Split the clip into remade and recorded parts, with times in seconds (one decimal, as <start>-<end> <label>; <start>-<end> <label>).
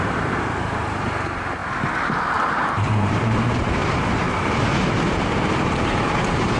0.0-1.6 remade; 1.6-2.7 recorded; 2.7-3.8 remade; 3.8-5.8 recorded; 5.8-6.6 remade